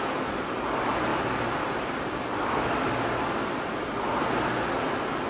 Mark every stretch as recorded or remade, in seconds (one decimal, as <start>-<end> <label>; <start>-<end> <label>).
0.0-5.3 recorded